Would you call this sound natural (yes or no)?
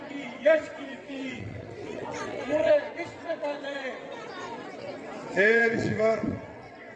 no